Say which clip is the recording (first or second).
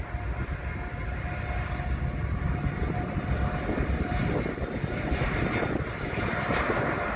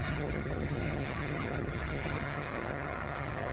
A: first